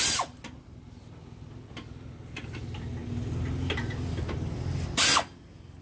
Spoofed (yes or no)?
no